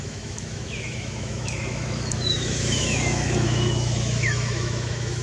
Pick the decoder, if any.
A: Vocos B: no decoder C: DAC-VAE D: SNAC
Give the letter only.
C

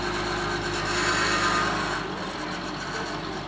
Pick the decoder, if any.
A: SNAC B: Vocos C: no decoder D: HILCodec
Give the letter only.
C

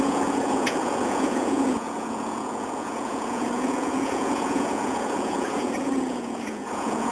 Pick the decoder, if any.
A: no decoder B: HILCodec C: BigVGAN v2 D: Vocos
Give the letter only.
D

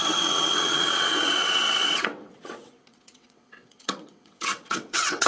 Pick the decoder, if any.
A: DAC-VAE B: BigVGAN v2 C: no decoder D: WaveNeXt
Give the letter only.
D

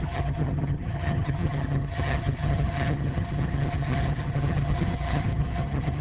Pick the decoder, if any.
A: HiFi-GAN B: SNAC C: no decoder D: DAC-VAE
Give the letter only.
A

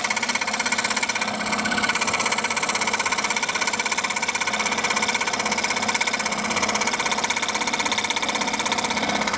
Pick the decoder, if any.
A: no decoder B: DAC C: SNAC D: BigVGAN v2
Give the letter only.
A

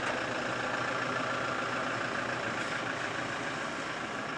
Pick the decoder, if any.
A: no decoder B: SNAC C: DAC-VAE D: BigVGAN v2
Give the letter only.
A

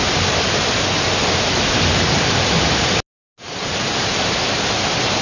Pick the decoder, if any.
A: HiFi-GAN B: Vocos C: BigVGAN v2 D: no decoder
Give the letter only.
D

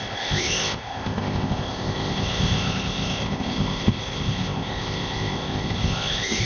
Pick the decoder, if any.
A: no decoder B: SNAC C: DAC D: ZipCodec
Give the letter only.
D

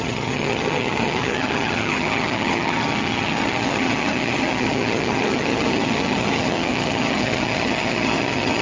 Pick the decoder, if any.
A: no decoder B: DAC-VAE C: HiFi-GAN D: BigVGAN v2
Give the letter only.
C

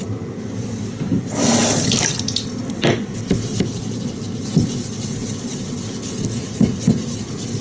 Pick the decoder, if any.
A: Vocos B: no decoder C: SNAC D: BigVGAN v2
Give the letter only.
B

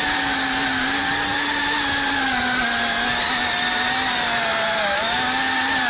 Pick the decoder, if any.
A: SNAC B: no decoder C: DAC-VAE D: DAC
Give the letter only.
B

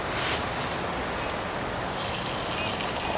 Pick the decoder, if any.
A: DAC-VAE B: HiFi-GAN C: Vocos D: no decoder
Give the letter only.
D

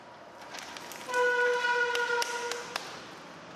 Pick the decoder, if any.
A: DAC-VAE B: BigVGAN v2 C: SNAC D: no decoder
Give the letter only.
D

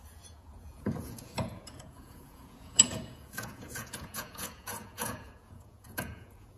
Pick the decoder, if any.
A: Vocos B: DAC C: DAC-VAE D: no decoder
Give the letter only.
A